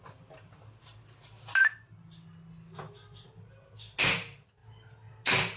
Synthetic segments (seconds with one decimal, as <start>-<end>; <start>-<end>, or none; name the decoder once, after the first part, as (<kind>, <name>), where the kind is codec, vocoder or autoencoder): none